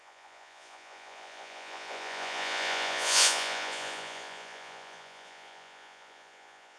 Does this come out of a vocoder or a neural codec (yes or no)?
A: yes